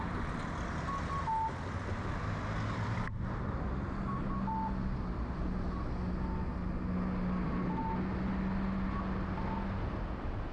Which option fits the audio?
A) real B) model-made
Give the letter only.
A